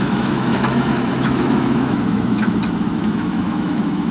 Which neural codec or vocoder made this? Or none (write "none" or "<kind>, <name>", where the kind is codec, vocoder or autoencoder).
autoencoder, DAC-VAE